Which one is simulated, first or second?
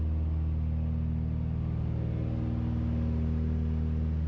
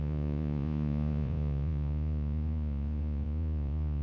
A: second